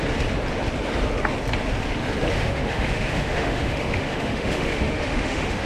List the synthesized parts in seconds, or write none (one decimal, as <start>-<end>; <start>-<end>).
2.3-5.7